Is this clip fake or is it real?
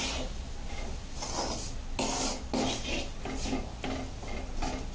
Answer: real